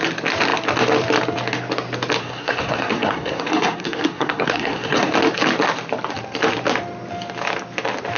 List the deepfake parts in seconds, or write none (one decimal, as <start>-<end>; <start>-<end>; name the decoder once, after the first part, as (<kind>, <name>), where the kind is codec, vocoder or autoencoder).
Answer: 2.2-5.1 (codec, SNAC)